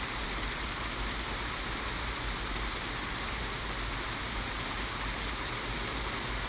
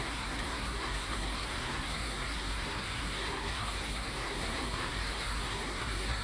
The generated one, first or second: second